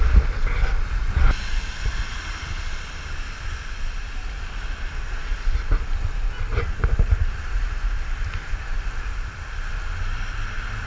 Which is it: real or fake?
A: real